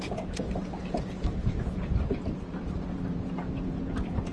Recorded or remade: remade